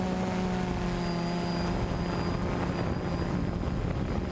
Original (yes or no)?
yes